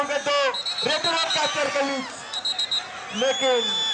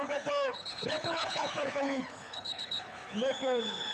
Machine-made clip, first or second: second